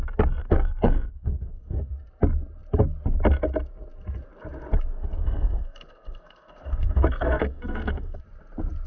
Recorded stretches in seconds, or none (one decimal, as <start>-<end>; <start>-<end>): 0.0-0.4; 1.9-5.2; 8.2-8.9